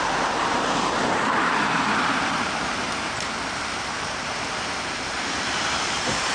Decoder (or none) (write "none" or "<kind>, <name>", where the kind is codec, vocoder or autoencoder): vocoder, BigVGAN v2